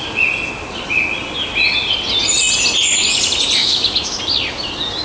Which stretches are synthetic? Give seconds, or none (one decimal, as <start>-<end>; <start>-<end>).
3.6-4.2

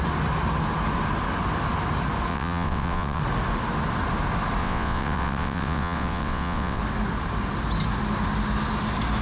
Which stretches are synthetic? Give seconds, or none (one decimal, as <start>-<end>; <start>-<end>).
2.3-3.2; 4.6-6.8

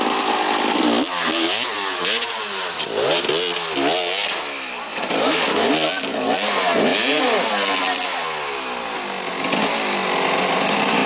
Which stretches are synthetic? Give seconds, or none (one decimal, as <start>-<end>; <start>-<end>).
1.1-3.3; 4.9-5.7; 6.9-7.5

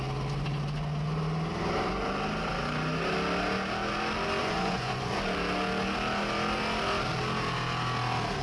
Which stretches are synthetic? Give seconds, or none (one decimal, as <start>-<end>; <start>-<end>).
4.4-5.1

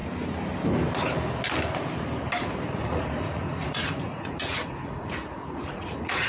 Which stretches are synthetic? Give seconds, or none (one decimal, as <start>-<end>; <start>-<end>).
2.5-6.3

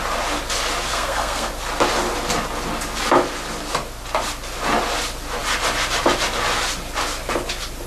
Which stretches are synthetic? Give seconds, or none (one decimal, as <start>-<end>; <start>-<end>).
0.9-1.5